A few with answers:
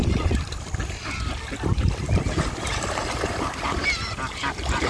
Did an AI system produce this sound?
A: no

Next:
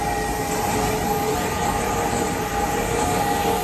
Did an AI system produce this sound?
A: no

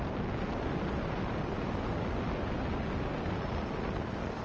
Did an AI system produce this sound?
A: no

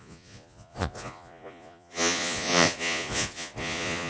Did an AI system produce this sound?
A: yes